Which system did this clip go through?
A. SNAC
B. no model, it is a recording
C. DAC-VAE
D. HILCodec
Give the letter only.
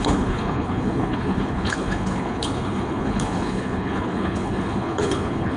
D